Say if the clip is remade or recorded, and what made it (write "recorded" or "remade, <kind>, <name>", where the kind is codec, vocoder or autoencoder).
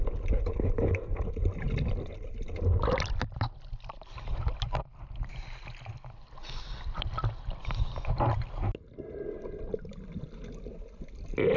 recorded